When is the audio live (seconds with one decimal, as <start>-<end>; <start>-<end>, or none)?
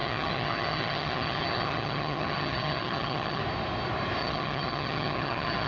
3.4-4.2